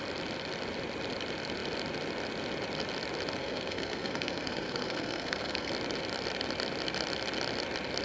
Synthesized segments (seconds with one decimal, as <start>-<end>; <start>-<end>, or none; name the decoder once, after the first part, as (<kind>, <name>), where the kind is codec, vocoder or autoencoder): 3.4-5.7 (codec, SNAC)